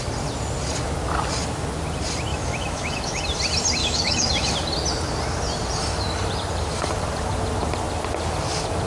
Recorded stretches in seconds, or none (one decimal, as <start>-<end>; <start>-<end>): 0.0-2.3; 3.2-3.8; 4.5-8.9

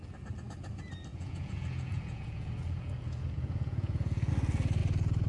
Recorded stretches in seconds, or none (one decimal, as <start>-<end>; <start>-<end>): 0.0-1.1; 4.3-5.3